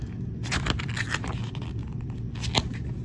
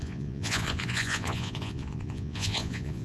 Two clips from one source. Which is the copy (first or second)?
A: second